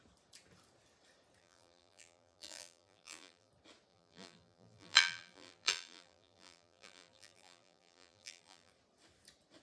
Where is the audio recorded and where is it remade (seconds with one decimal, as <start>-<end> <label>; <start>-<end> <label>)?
0.0-1.4 recorded; 1.4-3.5 remade; 3.5-3.9 recorded; 3.9-8.7 remade; 8.7-9.6 recorded